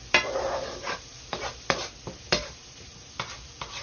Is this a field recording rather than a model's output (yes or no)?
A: no